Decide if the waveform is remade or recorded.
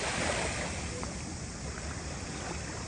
recorded